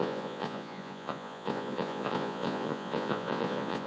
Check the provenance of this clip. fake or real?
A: fake